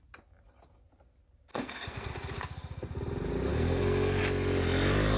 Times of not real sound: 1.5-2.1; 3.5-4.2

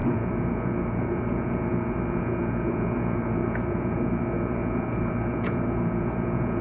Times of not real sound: 0.0-6.6

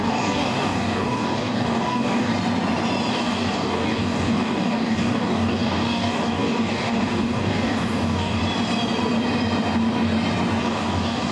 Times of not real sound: 0.0-2.3; 3.1-8.4; 10.6-11.3

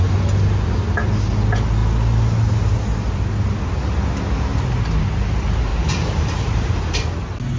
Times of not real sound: 5.7-6.8